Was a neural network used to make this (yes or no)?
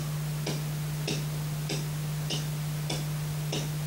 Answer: no